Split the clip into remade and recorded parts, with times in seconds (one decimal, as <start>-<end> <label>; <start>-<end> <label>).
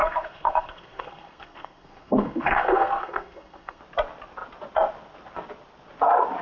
0.0-3.8 remade; 3.8-6.4 recorded